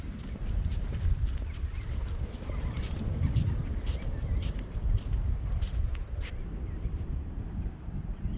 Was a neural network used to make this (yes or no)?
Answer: yes